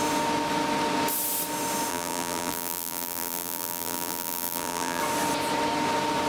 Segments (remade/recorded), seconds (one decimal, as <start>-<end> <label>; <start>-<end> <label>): 0.0-1.9 recorded; 1.9-5.0 remade; 5.0-6.3 recorded